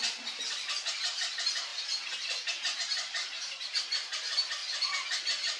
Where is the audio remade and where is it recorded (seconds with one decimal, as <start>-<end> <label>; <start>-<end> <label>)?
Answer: 0.0-5.6 recorded